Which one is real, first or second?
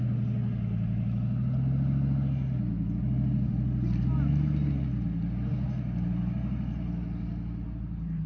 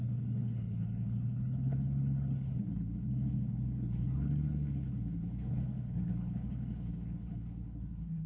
first